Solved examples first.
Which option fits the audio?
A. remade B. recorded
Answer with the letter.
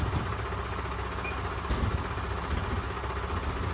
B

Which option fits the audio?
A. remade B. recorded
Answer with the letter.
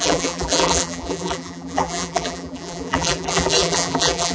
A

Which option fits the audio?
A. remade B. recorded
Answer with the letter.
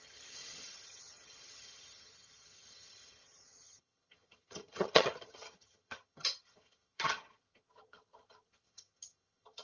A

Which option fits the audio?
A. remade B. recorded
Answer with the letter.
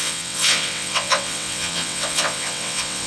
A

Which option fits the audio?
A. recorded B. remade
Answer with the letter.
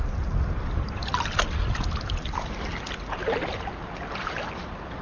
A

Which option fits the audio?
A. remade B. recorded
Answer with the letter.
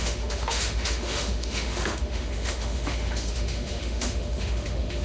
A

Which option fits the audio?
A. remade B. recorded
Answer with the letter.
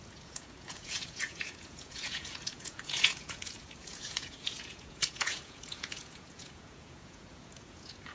A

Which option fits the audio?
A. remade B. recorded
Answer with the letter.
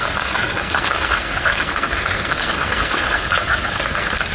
A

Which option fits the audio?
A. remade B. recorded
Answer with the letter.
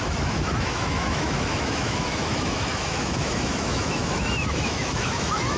A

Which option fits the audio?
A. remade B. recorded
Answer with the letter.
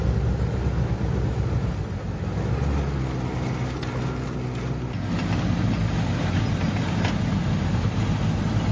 B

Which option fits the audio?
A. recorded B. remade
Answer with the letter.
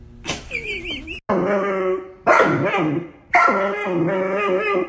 A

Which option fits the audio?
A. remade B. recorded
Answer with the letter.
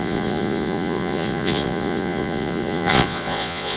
A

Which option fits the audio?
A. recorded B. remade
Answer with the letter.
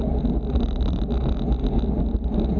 A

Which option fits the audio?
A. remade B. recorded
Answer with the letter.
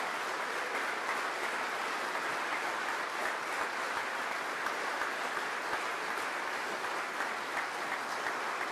B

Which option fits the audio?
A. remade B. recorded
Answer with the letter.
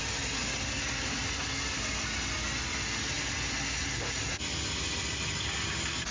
B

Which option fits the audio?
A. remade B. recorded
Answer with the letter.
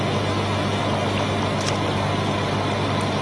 B